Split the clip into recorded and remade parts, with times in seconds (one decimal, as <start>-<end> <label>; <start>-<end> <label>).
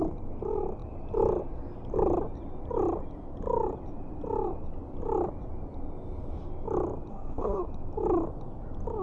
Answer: 0.0-7.1 recorded; 7.1-7.6 remade; 7.6-9.0 recorded